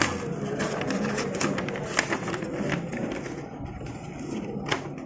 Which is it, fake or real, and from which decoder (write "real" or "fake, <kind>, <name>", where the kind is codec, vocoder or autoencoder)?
real